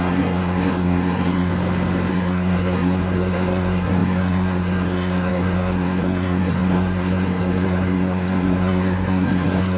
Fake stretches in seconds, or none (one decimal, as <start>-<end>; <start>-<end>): 0.0-1.5; 2.1-9.8